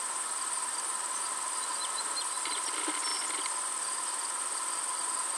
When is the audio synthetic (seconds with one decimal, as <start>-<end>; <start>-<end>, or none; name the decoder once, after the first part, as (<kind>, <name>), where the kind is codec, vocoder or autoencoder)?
none